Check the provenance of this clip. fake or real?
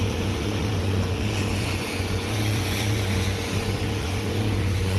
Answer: fake